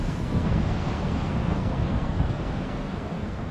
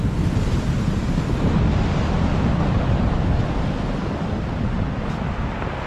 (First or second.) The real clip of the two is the second